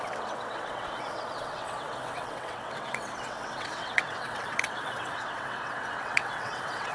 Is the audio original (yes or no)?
no